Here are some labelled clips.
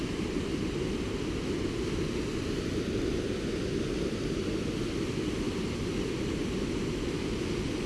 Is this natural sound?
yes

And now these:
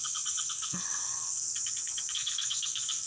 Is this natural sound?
no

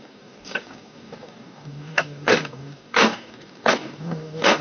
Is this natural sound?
no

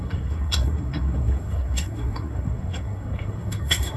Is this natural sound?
no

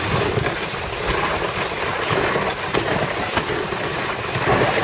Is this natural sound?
yes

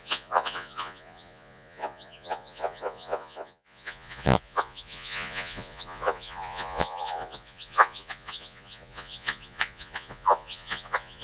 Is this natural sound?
no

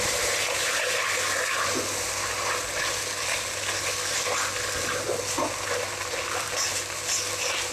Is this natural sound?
yes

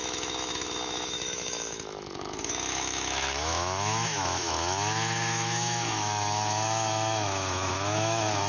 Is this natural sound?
no